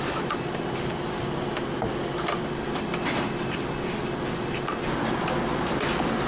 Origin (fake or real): real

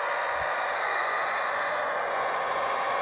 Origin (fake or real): fake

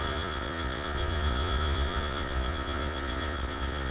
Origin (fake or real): fake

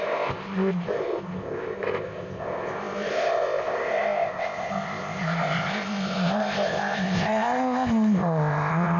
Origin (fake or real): fake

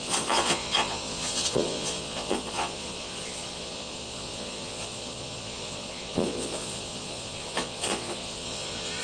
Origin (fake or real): fake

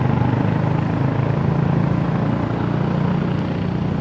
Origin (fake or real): real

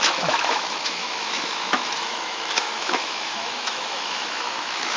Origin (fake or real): fake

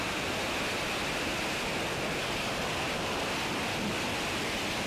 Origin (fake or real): real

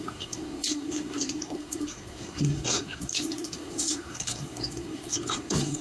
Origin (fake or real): fake